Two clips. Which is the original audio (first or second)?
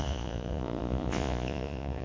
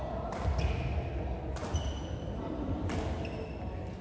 second